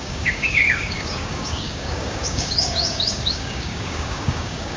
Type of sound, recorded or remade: remade